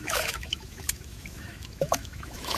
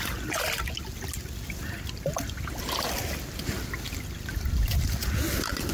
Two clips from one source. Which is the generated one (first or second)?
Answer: first